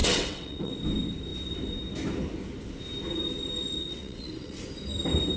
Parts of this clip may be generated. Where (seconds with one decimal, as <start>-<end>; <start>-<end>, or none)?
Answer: 0.0-0.7; 3.8-4.6